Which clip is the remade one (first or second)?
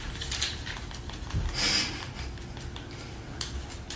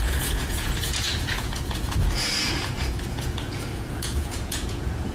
second